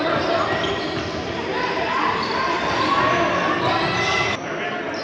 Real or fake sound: real